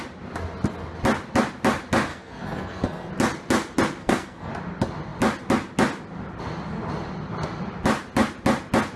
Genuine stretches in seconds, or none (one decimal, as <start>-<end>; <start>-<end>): 0.0-2.1; 3.1-4.0; 4.5-9.0